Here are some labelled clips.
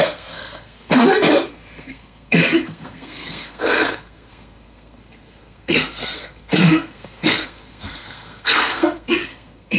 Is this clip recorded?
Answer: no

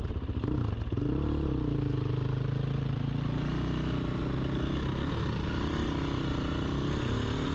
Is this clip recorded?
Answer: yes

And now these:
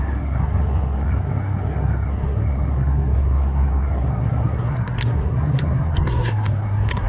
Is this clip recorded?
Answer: no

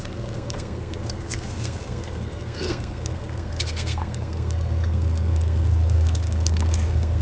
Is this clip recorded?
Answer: no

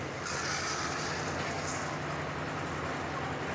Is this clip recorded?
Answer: yes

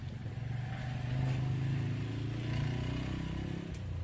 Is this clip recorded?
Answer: yes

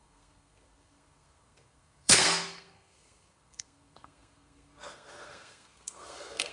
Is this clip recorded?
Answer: no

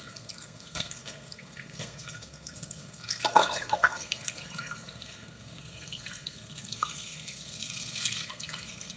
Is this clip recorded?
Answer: no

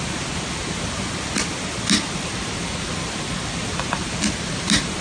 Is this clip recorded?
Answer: yes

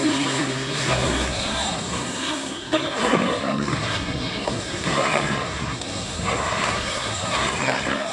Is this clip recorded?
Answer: no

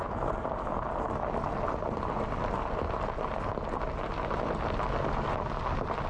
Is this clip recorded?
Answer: yes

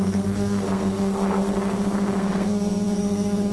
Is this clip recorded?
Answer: no